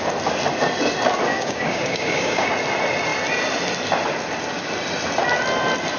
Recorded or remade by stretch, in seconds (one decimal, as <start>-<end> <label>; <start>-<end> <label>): 0.0-1.3 recorded; 1.3-2.5 remade; 2.5-6.0 recorded